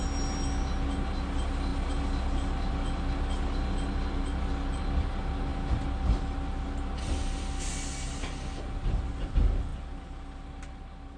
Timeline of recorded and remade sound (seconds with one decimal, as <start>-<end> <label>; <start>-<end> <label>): 0.0-11.2 recorded